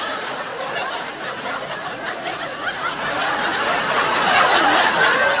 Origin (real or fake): fake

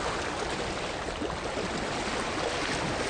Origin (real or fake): real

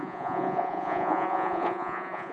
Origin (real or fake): fake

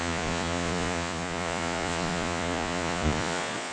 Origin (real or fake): fake